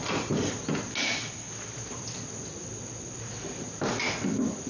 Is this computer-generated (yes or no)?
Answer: no